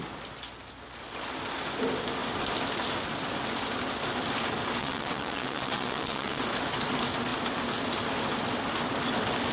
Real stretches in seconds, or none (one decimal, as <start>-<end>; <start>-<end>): 0.0-4.8; 6.4-9.5